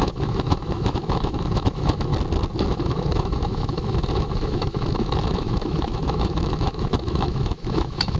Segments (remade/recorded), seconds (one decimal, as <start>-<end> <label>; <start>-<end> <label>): 0.0-2.1 remade; 2.1-2.7 recorded; 2.7-8.2 remade